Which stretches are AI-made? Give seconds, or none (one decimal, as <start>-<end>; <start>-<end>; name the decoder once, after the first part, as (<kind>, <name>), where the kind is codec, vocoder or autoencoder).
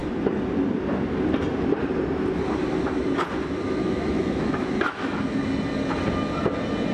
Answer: 3.8-5.4 (autoencoder, DAC-VAE)